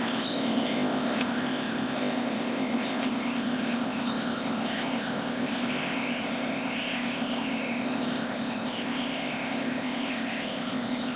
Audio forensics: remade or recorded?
remade